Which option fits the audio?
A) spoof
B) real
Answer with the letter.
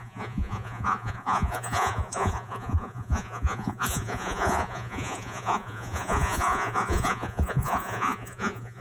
A